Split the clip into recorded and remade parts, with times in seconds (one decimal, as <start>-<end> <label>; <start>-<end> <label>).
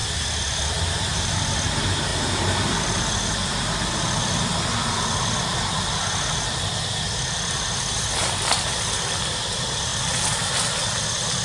0.0-11.4 recorded